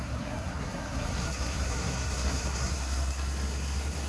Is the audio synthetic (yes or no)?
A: yes